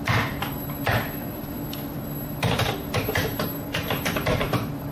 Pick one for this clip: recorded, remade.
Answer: remade